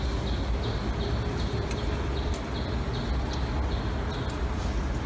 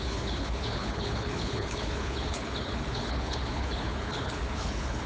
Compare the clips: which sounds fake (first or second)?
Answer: second